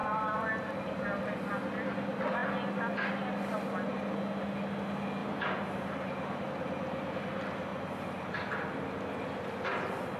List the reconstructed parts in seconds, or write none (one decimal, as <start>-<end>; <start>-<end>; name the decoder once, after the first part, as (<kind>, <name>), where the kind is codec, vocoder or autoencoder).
5.2-6.5 (vocoder, BigVGAN v2); 7.7-8.3